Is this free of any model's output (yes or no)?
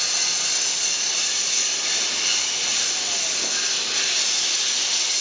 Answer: yes